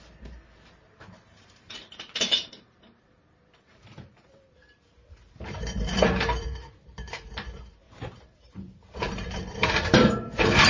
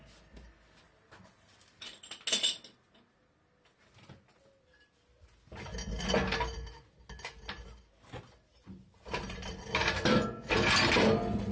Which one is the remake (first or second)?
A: first